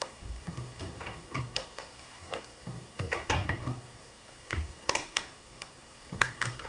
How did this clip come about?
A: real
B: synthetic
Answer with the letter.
B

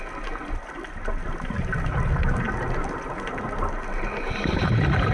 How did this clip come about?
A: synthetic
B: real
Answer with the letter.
B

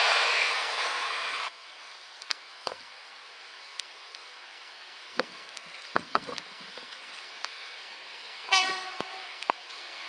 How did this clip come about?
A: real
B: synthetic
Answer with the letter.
B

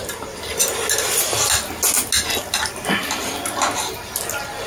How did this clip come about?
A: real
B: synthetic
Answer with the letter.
A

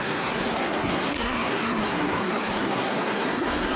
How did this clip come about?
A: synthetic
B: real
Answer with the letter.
A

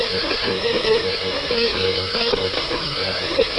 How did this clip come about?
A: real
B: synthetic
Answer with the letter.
B